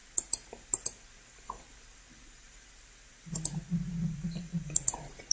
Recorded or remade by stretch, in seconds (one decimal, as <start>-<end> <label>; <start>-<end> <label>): 0.0-5.3 recorded